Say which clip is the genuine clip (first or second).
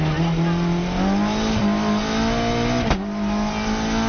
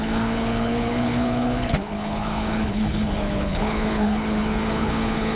first